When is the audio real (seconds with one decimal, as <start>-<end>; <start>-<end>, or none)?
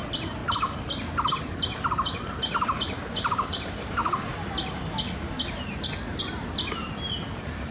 0.4-1.4; 4.0-6.2